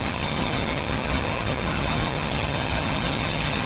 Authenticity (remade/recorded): remade